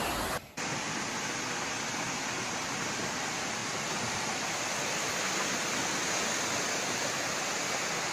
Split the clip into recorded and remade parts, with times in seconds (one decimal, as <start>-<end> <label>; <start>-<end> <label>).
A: 0.0-0.4 recorded; 0.4-1.1 remade; 1.1-3.6 recorded; 3.6-5.2 remade; 5.2-8.1 recorded